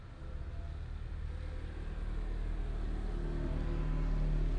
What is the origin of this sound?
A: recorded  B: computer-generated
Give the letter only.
A